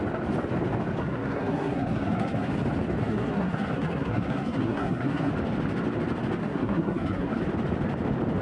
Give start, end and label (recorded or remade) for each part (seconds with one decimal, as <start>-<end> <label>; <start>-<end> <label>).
0.0-1.0 recorded; 1.0-2.5 remade; 2.5-3.0 recorded; 3.0-5.3 remade; 5.3-6.4 recorded; 6.4-7.4 remade; 7.4-8.4 recorded